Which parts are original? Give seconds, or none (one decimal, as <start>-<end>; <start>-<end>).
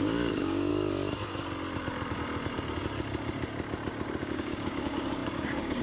0.7-4.2